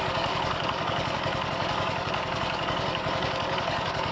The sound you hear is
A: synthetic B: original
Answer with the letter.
A